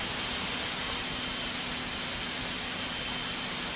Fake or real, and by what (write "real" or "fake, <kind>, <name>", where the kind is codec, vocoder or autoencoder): real